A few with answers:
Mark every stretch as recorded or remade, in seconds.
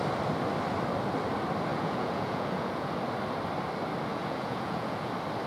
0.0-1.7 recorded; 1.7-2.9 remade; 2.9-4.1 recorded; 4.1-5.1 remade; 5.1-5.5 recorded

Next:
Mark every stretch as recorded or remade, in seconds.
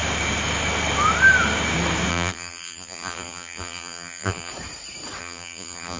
0.0-2.1 recorded; 2.1-4.5 remade; 4.5-5.2 recorded; 5.2-6.0 remade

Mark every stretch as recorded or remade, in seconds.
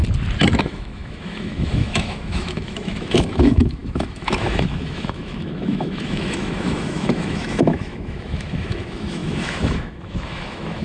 0.0-0.6 recorded; 0.6-10.8 remade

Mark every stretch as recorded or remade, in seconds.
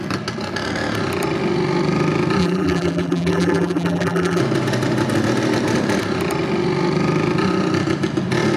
0.0-2.4 recorded; 2.4-4.4 remade; 4.4-8.6 recorded